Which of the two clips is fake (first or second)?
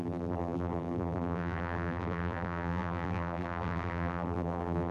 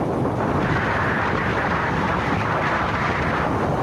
first